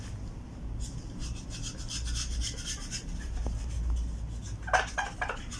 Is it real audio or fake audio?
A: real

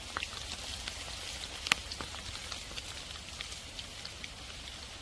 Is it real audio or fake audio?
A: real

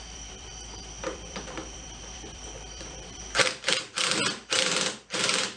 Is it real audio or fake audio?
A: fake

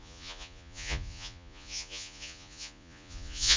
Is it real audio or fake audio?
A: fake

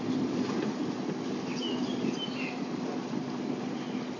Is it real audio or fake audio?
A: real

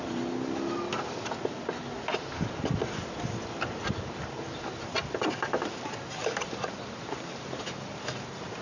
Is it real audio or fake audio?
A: real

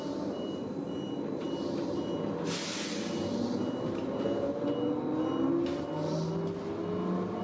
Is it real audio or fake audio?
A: real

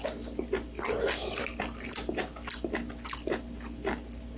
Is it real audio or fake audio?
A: real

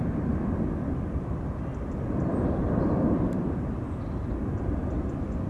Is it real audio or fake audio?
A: real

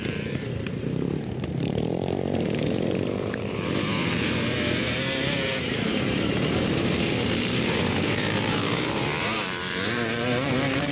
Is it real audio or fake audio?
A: fake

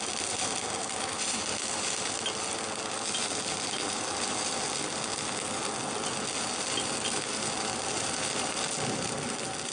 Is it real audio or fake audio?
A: real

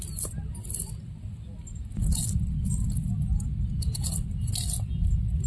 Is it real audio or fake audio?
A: real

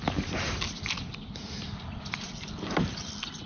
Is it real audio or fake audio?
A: real